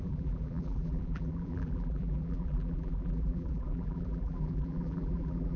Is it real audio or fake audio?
fake